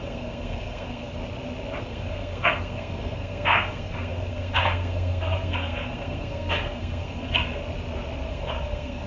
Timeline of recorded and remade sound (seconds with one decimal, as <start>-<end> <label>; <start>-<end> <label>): 0.0-1.2 remade; 1.2-1.8 recorded; 1.8-7.6 remade; 7.6-8.3 recorded; 8.3-9.1 remade